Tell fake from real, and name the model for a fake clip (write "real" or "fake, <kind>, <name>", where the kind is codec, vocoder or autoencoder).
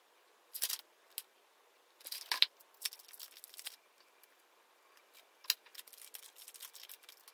real